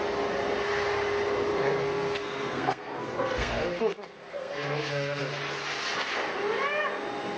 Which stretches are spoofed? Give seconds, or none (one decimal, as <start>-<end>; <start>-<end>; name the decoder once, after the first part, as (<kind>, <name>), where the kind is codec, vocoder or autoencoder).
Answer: 1.5-5.2 (codec, SNAC)